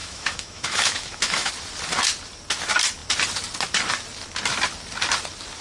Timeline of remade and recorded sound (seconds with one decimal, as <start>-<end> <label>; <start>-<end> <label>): 0.0-1.5 remade; 1.5-5.6 recorded